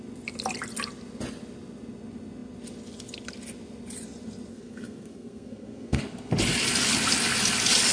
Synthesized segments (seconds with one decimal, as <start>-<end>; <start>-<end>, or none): 4.5-6.0